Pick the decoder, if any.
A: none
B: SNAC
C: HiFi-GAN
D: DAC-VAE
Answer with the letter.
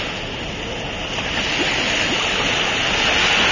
A